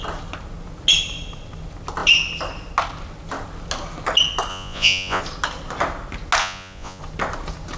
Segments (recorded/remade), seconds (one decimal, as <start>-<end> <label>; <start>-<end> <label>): 0.0-4.5 recorded; 4.5-5.2 remade; 5.2-6.4 recorded; 6.4-7.0 remade; 7.0-7.8 recorded